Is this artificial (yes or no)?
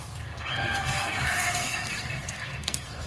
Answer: yes